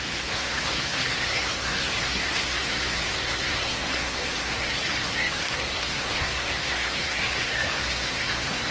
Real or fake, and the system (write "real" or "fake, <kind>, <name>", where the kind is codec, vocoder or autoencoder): fake, codec, SNAC